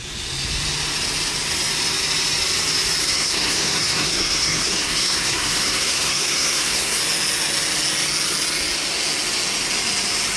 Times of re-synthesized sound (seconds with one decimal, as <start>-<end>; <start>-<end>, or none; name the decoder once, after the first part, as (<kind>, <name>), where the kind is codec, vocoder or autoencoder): 3.0-7.0 (codec, SNAC)